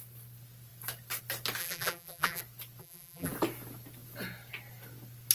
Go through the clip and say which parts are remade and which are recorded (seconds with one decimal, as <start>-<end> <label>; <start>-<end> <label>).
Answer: 0.0-1.6 recorded; 1.6-2.4 remade; 2.4-2.8 recorded; 2.8-3.3 remade; 3.3-5.3 recorded